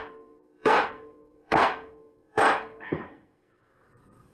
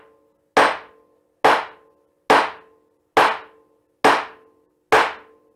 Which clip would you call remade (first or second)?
first